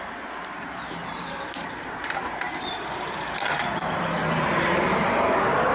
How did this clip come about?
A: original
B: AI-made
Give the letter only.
B